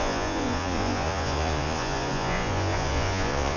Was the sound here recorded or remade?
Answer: remade